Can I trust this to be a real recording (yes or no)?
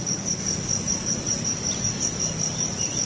yes